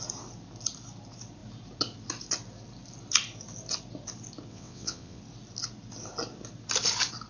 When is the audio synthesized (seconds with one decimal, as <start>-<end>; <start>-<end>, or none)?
4.5-5.2